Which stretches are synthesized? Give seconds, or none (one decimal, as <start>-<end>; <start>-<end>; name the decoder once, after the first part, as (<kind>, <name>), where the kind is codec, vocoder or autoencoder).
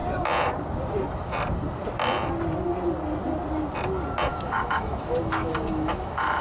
4.3-6.4 (autoencoder, DAC-VAE)